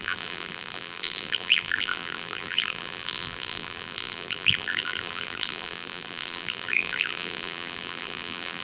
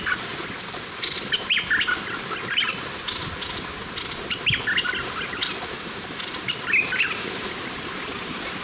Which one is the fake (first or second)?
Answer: first